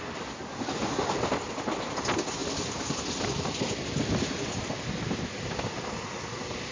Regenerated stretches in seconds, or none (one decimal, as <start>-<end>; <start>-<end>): none

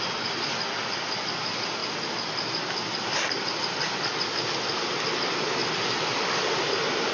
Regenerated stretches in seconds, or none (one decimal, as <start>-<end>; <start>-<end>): none

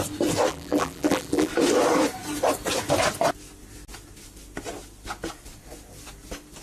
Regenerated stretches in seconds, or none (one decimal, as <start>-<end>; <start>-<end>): 0.5-1.5

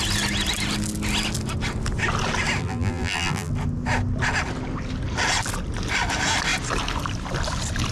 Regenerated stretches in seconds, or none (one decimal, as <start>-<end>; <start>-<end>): 2.6-3.5

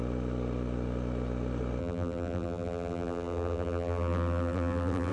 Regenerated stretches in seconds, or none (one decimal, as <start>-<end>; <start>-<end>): 1.8-5.1

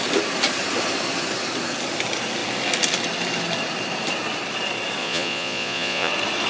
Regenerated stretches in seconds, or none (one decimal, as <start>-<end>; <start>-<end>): 5.0-6.1

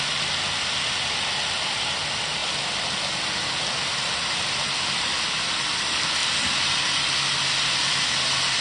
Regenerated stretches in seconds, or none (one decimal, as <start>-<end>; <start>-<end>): none

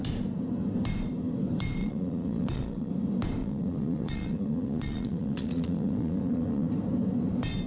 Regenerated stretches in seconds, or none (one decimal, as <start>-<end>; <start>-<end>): 1.8-2.9; 3.4-6.7